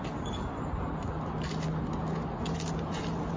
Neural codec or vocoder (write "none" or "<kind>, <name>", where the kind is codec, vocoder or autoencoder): none